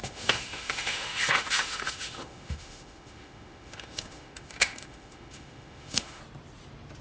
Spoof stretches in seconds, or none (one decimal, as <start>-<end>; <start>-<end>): 0.0-6.2

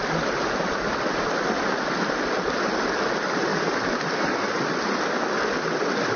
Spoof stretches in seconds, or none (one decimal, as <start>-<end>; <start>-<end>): none

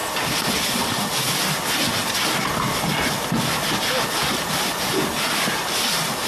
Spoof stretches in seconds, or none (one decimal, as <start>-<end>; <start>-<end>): none

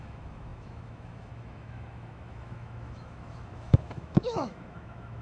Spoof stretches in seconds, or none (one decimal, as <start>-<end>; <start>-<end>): 0.0-5.2